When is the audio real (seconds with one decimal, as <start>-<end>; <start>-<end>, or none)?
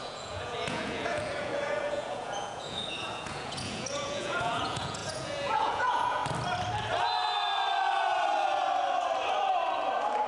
6.2-10.3